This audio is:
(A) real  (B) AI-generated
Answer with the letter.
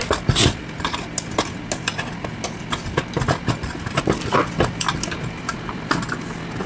A